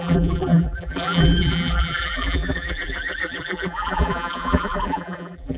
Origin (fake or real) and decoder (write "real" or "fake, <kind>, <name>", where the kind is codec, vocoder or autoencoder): fake, vocoder, BigVGAN v2